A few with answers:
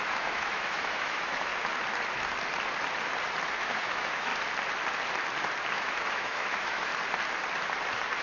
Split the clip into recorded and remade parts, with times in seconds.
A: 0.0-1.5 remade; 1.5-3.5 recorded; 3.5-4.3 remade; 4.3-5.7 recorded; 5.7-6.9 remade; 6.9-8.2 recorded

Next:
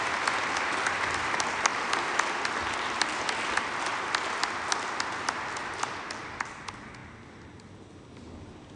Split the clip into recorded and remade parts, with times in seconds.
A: 0.0-8.8 recorded

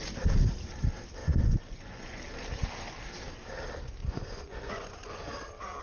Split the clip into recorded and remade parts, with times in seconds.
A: 0.0-1.2 recorded; 1.2-2.2 remade; 2.2-4.0 recorded; 4.0-5.3 remade; 5.3-5.8 recorded

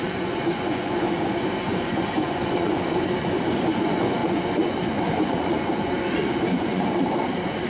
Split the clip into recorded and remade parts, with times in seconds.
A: 0.0-7.7 remade